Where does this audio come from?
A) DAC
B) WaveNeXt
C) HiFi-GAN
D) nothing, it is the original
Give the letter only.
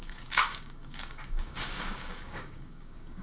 A